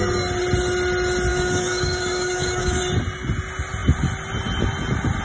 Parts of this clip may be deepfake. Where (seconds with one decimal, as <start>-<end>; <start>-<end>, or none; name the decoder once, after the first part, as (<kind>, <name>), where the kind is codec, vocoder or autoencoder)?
1.3-2.8 (codec, DAC)